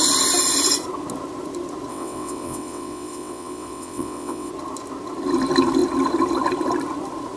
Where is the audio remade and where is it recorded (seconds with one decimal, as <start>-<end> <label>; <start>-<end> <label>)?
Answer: 0.0-1.9 recorded; 1.9-4.5 remade; 4.5-7.4 recorded